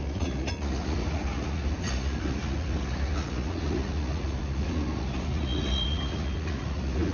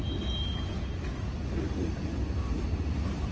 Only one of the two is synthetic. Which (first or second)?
first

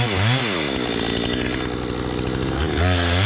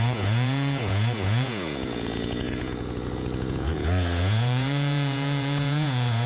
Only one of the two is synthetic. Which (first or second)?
second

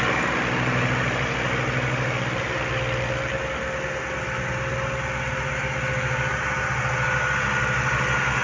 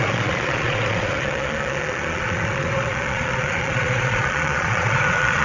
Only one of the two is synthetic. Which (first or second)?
second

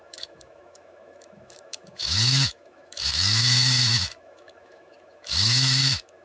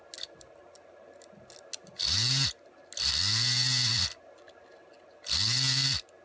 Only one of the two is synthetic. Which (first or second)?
first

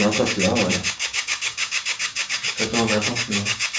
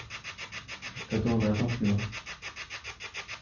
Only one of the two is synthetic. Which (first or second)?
first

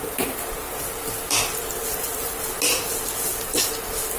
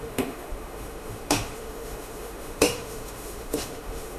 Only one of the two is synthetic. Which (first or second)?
second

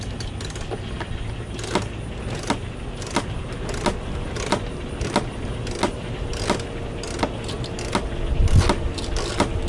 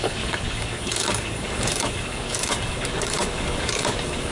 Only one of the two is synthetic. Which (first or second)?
second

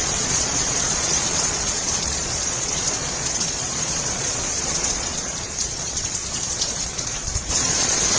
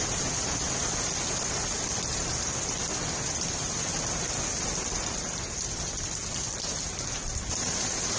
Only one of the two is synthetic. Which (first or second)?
first